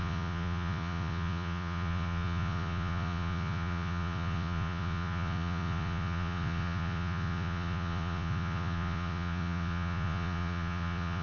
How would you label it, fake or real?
fake